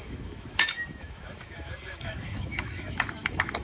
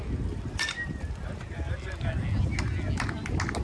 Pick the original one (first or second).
second